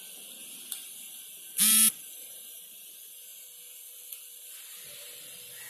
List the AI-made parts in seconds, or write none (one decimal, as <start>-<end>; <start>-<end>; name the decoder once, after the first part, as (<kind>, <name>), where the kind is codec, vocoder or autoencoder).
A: 0.4-2.6 (vocoder, BigVGAN v2)